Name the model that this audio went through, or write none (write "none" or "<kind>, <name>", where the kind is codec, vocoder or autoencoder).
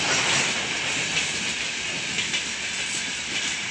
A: none